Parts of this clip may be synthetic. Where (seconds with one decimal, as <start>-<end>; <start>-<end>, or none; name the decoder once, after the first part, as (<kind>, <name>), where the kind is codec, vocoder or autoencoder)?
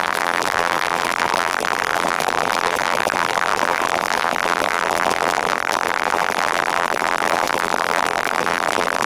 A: 0.0-9.1 (vocoder, BigVGAN v2)